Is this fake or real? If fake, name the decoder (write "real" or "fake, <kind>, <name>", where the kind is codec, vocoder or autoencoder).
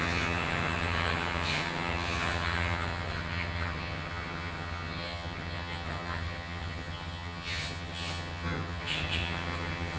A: fake, vocoder, HiFi-GAN